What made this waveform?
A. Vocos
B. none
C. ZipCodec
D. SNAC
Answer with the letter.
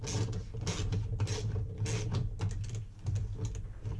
B